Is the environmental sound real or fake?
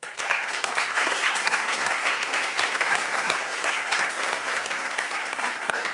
fake